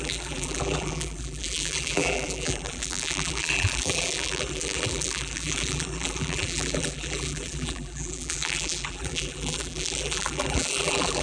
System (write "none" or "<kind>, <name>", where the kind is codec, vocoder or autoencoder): vocoder, BigVGAN v2